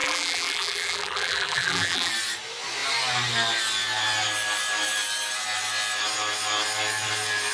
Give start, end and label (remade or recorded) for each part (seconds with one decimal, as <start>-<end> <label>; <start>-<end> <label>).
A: 0.0-2.1 remade; 2.1-7.5 recorded